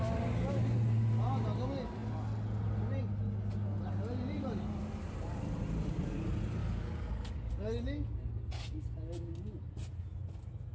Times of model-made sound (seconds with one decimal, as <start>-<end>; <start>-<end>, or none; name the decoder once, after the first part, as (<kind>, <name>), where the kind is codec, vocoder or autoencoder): 6.6-7.5 (codec, DAC)